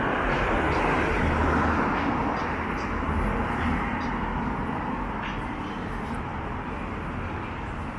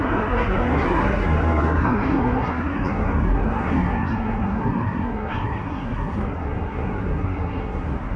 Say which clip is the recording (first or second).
first